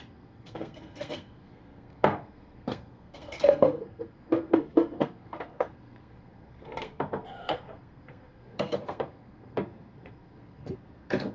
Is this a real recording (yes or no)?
no